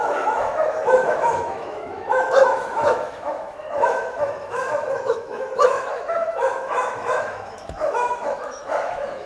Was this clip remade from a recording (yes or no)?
yes